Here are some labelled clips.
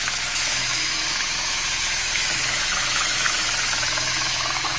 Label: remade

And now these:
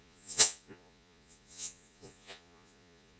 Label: remade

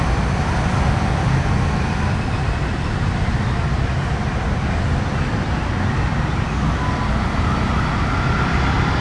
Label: recorded